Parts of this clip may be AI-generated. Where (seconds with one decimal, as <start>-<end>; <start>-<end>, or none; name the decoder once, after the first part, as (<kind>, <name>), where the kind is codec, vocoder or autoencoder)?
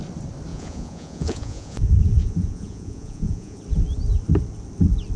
0.5-3.6 (vocoder, Vocos)